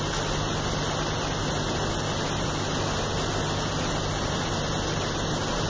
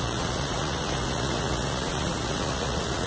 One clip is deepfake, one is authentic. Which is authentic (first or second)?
first